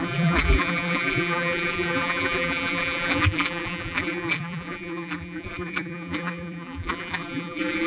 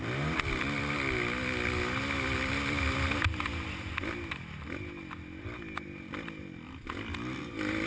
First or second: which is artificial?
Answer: first